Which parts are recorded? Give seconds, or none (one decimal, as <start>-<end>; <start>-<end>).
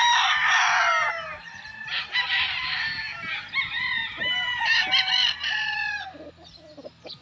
0.0-7.2